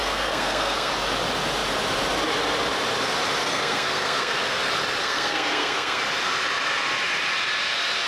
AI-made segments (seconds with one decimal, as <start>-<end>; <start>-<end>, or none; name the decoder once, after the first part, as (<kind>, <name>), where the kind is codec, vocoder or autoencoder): 0.0-0.9 (codec, SNAC); 3.4-4.6; 5.0-6.0